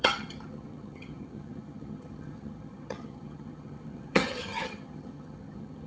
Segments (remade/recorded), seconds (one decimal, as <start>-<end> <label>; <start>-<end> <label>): 0.0-5.9 remade